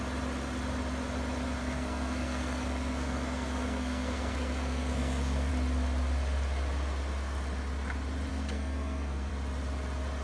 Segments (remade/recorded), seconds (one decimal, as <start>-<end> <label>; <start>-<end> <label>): 0.0-1.6 recorded; 1.6-5.5 remade; 5.5-8.3 recorded; 8.3-9.3 remade; 9.3-10.2 recorded